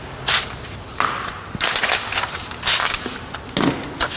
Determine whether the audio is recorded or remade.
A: recorded